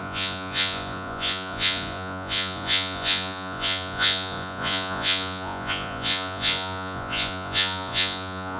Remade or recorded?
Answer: remade